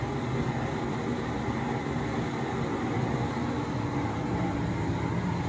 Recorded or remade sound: recorded